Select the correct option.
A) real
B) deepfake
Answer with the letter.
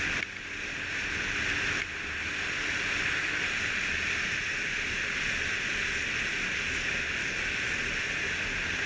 A